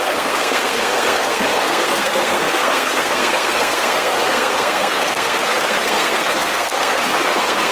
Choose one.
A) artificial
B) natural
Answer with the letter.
A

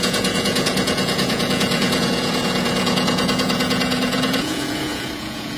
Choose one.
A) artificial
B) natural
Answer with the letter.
A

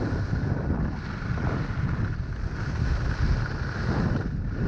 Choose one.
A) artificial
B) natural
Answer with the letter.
B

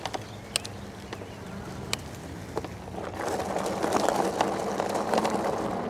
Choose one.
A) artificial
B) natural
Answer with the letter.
B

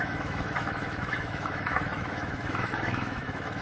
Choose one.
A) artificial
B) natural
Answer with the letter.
A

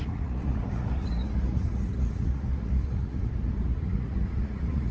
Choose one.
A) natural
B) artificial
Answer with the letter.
B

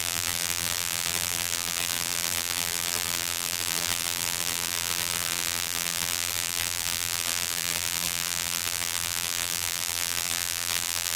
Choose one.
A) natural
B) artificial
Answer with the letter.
B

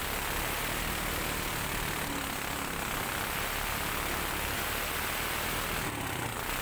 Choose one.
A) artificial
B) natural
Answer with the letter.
B